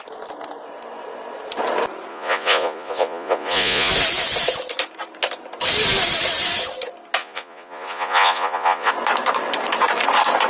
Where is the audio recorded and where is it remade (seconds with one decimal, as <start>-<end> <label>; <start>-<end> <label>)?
0.0-2.1 recorded; 2.1-3.9 remade; 3.9-7.2 recorded; 7.2-8.9 remade; 8.9-10.5 recorded